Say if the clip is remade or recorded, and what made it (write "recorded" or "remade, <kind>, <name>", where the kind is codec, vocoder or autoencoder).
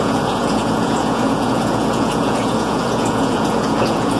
remade, vocoder, Vocos